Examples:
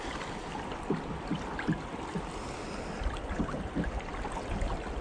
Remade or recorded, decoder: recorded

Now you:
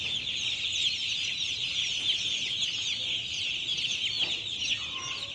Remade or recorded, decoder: recorded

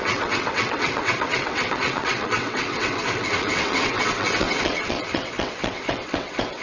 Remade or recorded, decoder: remade, vocoder, WaveNeXt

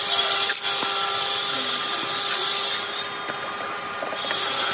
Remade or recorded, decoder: recorded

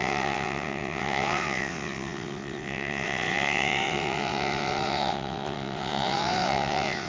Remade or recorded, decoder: remade, vocoder, WaveNeXt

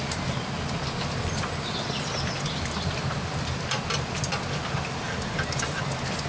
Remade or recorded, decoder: recorded